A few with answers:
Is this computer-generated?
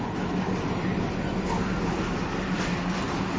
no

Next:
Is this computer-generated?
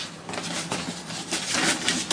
no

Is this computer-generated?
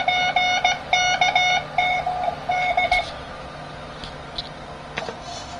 no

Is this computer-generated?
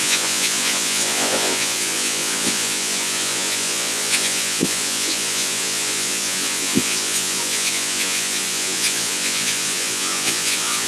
yes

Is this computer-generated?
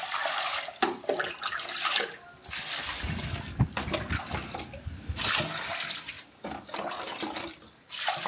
no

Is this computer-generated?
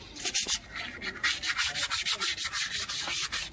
no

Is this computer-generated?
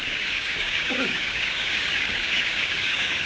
yes